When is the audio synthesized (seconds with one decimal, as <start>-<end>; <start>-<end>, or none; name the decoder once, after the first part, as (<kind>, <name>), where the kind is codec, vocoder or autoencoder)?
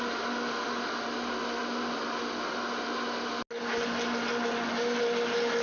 none